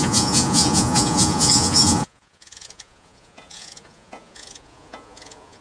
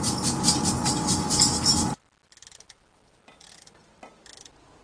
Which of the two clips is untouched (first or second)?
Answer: second